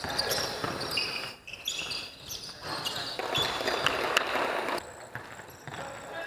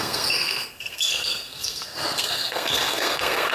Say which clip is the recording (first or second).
first